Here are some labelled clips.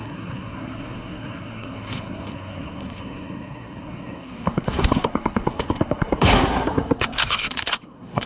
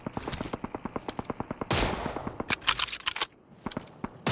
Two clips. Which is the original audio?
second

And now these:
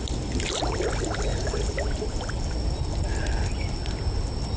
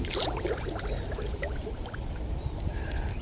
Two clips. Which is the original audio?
first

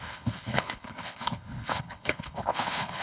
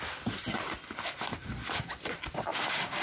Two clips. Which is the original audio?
second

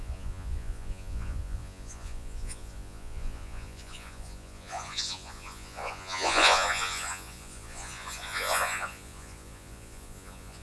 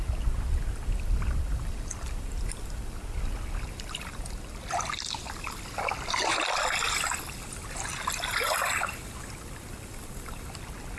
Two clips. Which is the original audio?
second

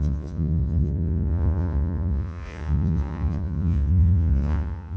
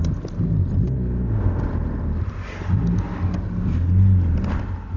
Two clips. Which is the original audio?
second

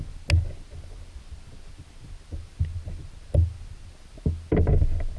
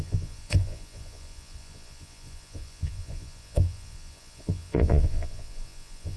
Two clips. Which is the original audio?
first